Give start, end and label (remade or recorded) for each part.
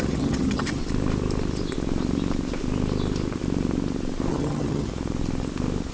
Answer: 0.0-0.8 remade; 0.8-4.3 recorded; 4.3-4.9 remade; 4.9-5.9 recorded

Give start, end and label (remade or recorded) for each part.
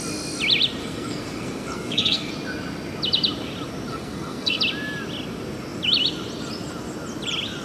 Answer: 0.0-0.8 recorded; 0.8-2.3 remade; 2.3-3.9 recorded; 3.9-4.6 remade; 4.6-7.6 recorded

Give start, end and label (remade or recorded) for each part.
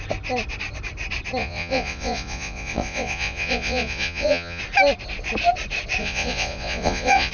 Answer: 0.0-1.4 recorded; 1.4-4.6 remade; 4.6-6.0 recorded; 6.0-7.3 remade